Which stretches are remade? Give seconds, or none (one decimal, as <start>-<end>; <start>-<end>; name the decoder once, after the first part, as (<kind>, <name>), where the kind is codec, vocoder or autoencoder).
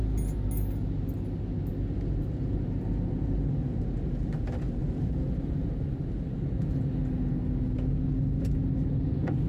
4.8-6.2 (vocoder, BigVGAN v2)